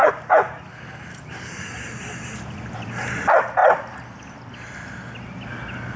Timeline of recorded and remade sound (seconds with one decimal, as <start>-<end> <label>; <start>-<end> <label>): 0.0-6.0 recorded